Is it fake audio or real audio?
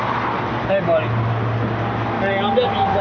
real